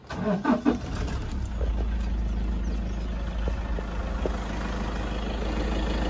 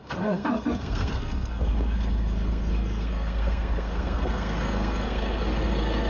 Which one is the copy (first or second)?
second